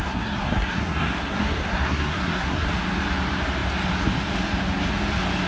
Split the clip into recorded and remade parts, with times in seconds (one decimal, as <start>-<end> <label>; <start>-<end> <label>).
0.0-2.7 remade; 2.7-5.5 recorded